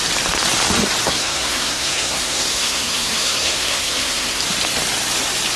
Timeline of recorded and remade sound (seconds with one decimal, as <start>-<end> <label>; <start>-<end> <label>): 0.0-1.0 recorded; 1.0-4.4 remade; 4.4-5.6 recorded